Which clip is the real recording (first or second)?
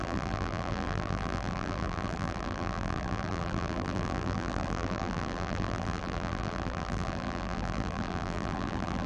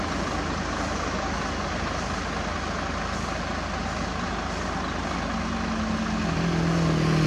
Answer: second